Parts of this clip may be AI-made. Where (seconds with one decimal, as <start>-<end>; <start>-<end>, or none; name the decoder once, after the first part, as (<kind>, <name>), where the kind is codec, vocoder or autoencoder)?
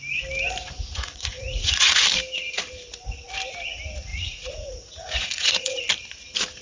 0.9-2.0 (vocoder, Vocos); 4.1-5.8